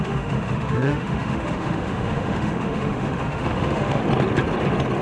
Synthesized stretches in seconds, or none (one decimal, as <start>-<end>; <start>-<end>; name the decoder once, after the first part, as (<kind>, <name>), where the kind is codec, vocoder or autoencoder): 0.0-4.0 (autoencoder, DAC-VAE)